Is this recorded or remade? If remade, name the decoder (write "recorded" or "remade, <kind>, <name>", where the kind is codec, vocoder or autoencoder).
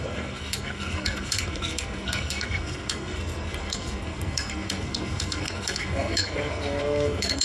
remade, codec, SNAC